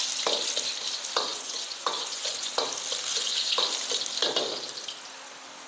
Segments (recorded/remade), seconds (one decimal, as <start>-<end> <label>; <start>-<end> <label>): 0.0-1.3 recorded; 1.3-2.5 remade; 2.5-3.1 recorded; 3.1-3.6 remade; 3.6-5.7 recorded